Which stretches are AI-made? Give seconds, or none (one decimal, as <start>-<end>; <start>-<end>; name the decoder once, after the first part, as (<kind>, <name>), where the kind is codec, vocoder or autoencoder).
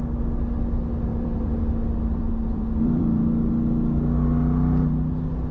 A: 1.1-3.5 (vocoder, BigVGAN v2)